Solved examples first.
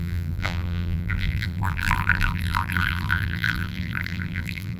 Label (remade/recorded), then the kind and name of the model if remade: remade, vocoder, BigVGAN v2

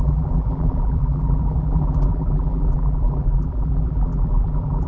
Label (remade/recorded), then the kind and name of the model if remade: remade, vocoder, BigVGAN v2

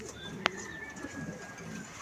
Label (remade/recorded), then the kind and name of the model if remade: recorded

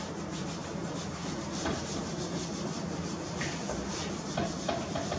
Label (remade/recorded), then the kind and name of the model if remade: recorded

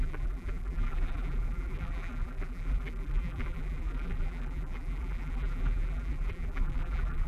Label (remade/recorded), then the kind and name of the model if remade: remade, vocoder, BigVGAN v2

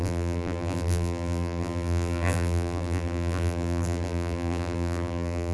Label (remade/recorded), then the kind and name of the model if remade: remade, vocoder, BigVGAN v2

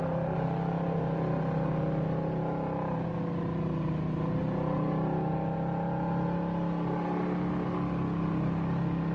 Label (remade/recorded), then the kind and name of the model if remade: recorded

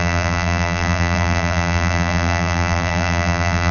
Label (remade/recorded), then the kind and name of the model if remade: remade, vocoder, BigVGAN v2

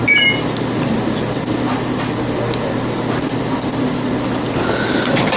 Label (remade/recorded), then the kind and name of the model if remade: recorded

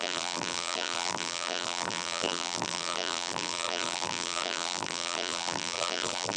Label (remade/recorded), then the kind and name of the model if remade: remade, vocoder, BigVGAN v2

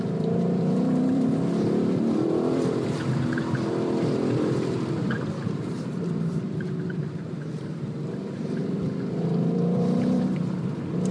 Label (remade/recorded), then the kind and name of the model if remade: remade, vocoder, BigVGAN v2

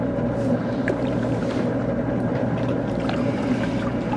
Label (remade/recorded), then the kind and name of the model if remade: remade, vocoder, BigVGAN v2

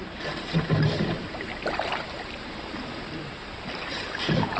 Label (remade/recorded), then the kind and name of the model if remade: remade, vocoder, BigVGAN v2